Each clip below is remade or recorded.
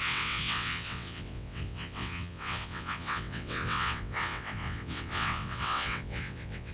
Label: remade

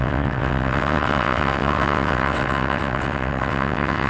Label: remade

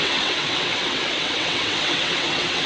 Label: remade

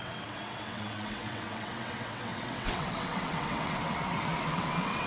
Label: remade